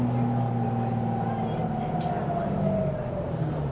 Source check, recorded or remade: recorded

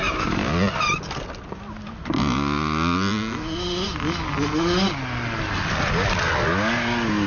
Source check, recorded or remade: recorded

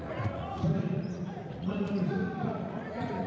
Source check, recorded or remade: remade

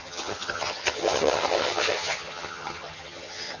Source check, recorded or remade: remade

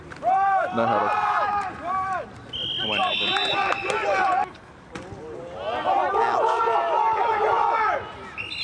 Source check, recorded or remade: recorded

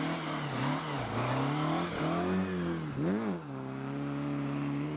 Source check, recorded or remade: recorded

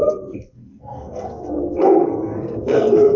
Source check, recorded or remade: remade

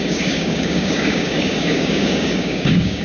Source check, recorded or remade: remade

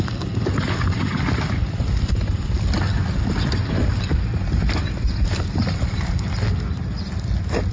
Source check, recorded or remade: recorded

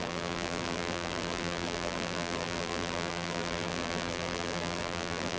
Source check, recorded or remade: remade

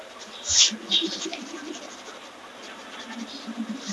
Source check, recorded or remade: recorded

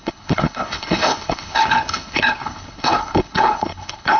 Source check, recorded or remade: remade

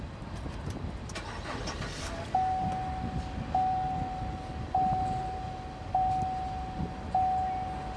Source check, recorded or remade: recorded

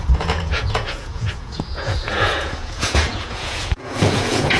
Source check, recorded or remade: remade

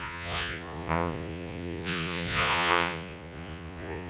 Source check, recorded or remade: remade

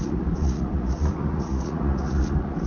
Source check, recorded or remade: remade